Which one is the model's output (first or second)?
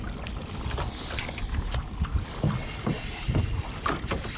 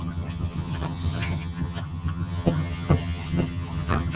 second